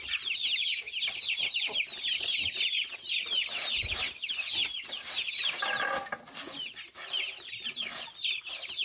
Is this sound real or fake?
real